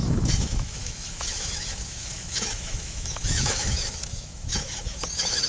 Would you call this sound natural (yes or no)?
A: no